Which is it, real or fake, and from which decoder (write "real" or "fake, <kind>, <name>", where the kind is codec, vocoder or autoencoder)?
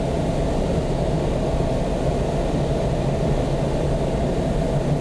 real